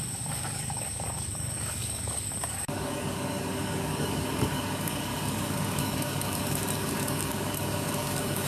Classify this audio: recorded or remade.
remade